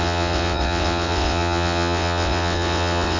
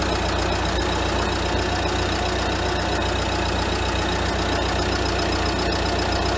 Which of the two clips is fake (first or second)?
first